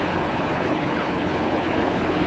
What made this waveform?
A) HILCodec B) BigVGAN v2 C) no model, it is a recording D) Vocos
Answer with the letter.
A